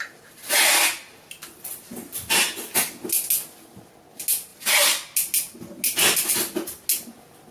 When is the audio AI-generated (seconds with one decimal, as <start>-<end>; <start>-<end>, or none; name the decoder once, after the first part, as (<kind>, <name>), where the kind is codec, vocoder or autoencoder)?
none